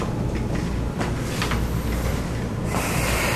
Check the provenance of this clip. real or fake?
real